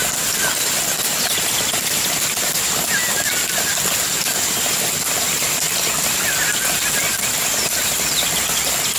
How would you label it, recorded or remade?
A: recorded